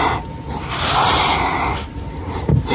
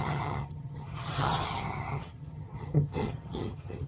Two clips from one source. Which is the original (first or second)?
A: first